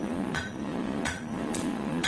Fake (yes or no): yes